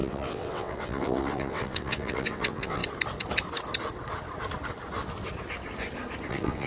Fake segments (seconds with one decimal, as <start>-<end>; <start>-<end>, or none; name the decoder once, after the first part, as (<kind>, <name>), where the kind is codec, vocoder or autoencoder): 0.0-2.8 (vocoder, WaveNeXt); 6.3-6.7